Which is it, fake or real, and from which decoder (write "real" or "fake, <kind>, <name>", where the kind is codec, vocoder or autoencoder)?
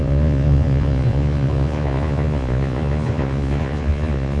fake, vocoder, Vocos